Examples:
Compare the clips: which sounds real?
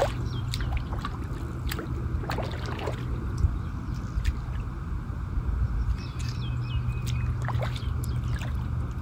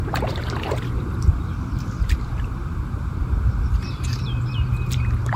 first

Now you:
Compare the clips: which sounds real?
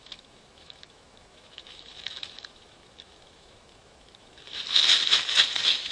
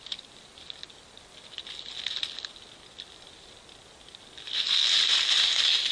second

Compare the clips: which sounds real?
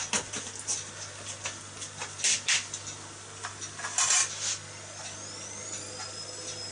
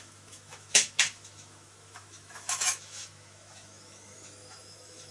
first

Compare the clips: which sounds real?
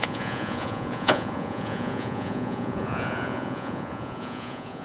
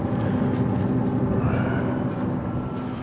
second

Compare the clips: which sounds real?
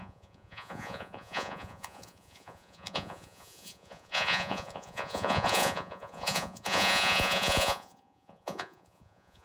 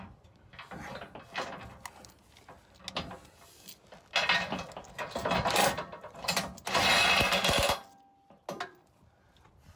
second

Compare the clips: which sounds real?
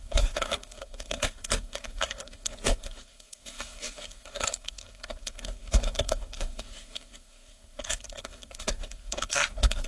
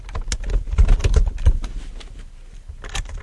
second